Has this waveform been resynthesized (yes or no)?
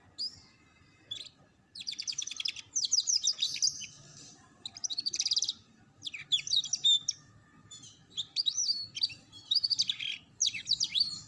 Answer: no